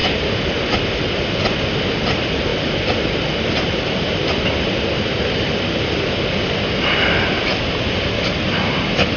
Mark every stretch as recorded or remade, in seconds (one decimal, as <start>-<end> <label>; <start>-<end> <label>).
0.0-9.2 recorded